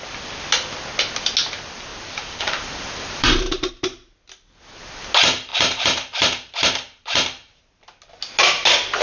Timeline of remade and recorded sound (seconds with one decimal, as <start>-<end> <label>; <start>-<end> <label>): 0.0-1.9 recorded; 1.9-3.7 remade; 3.7-5.5 recorded; 5.5-7.7 remade; 7.7-9.0 recorded